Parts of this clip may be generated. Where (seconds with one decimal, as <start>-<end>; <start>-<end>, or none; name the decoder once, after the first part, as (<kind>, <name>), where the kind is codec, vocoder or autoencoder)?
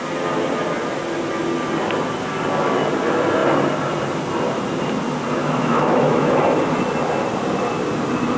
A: 5.4-6.4 (autoencoder, DAC-VAE)